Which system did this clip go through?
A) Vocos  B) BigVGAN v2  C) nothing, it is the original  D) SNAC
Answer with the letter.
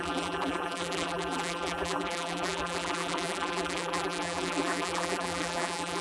B